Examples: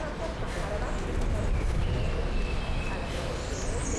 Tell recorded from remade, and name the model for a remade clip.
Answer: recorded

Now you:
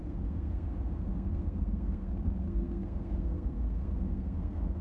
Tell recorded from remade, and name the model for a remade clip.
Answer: remade, codec, SNAC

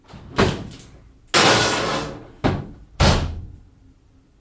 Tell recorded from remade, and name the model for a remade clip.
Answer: recorded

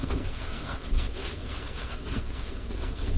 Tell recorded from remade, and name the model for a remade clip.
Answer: remade, codec, SNAC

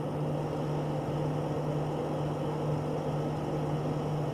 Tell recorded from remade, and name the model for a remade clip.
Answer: recorded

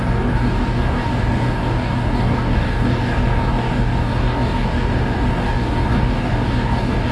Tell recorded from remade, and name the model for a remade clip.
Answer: remade, codec, DAC